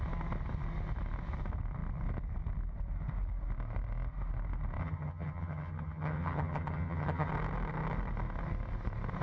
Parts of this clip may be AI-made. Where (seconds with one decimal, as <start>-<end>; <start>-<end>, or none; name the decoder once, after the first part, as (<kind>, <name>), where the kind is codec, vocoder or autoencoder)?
4.8-7.3 (vocoder, HiFi-GAN)